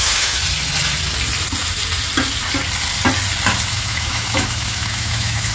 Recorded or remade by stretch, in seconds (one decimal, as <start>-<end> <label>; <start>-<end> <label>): 0.0-0.4 remade; 0.4-3.7 recorded; 3.7-5.5 remade